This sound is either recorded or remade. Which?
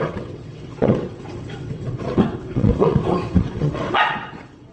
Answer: remade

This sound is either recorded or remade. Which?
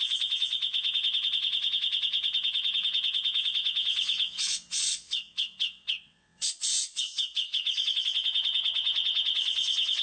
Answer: remade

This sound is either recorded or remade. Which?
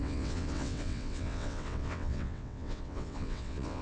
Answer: remade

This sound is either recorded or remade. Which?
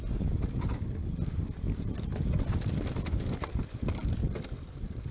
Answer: recorded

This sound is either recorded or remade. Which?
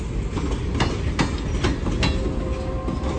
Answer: recorded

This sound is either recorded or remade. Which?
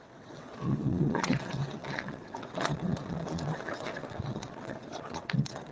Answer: remade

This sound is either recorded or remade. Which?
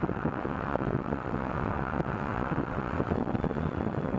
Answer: remade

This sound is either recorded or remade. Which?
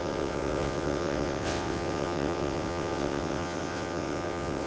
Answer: remade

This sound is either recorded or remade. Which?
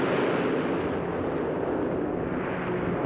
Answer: recorded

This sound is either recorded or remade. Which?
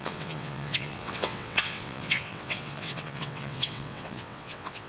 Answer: remade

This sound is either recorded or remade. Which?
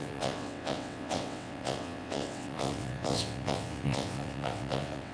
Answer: remade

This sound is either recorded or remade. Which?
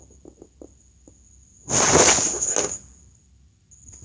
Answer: recorded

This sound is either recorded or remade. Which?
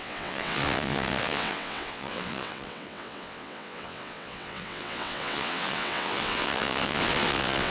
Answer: remade